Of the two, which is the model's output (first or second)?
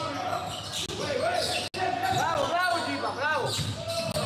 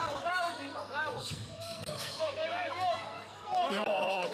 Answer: second